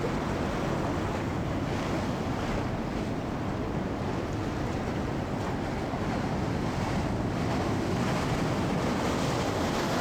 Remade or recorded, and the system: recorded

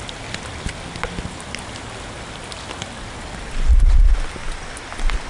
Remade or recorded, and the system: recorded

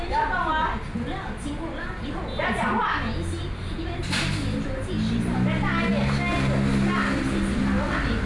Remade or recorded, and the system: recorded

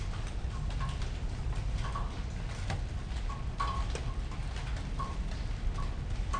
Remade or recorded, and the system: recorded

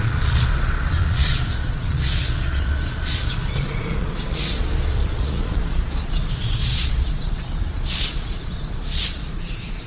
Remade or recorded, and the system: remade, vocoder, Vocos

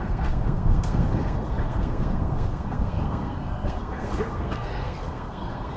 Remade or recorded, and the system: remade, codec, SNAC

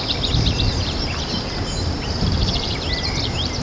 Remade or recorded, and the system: remade, vocoder, BigVGAN v2